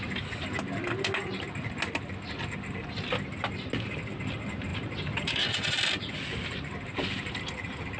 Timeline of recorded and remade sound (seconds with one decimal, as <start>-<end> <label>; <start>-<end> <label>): 0.0-4.7 recorded; 4.7-7.2 remade; 7.2-8.0 recorded